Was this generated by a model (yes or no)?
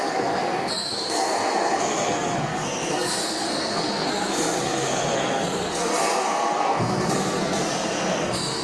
yes